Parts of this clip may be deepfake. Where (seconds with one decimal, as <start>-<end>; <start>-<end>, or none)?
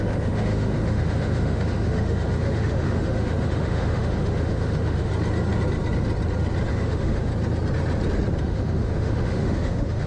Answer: 0.0-5.1; 6.7-7.3; 8.4-10.1